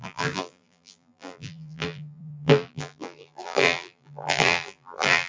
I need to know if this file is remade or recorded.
remade